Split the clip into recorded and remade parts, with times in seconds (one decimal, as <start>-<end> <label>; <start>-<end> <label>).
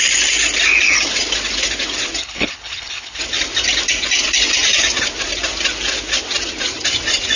0.0-2.2 recorded; 2.2-3.2 remade; 3.2-7.4 recorded